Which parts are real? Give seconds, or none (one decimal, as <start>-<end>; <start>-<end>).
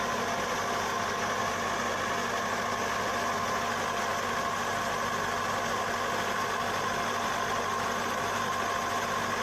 0.0-9.4